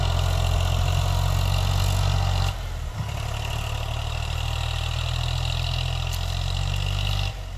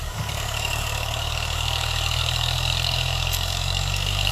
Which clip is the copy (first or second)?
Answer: second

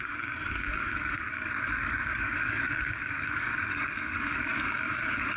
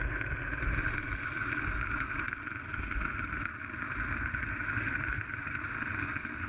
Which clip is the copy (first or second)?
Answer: first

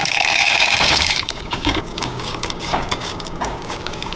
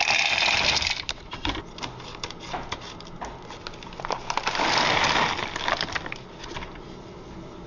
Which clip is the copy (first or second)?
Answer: first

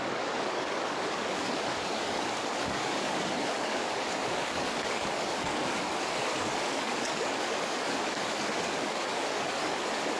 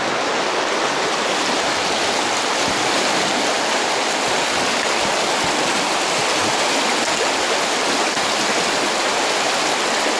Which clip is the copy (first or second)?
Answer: first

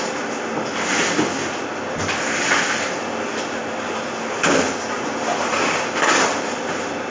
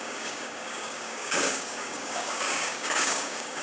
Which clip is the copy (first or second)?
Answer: second